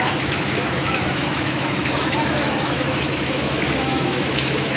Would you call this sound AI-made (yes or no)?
yes